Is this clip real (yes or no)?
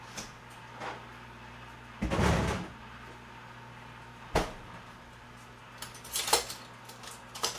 yes